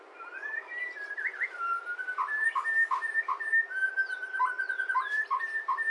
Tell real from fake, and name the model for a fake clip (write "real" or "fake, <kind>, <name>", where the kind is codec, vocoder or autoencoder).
real